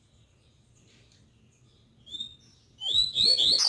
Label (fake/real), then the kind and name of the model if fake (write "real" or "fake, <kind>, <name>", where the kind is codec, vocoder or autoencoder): real